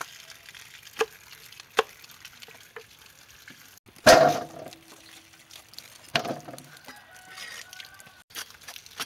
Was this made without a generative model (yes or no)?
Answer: yes